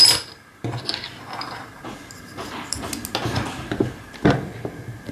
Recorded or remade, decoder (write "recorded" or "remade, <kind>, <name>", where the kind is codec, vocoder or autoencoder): recorded